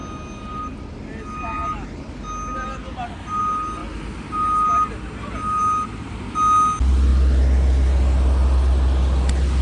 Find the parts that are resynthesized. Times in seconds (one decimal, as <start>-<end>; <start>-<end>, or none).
none